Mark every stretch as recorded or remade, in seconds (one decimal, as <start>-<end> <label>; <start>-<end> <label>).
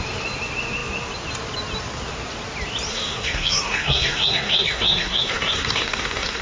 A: 0.0-2.9 recorded; 2.9-6.4 remade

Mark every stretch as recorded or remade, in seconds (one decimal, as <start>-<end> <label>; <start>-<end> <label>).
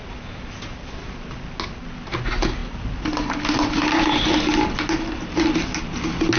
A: 0.0-6.4 recorded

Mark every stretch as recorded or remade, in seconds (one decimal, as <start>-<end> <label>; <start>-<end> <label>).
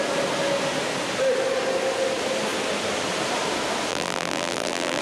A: 0.0-3.9 recorded; 3.9-5.0 remade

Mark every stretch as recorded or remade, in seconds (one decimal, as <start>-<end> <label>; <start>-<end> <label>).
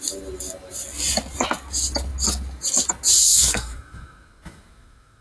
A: 0.0-3.2 recorded; 3.2-5.2 remade